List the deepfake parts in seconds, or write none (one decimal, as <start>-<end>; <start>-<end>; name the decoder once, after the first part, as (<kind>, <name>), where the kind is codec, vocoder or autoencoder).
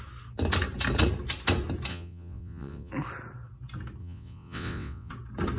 1.9-2.9 (vocoder, WaveNeXt); 4.0-5.1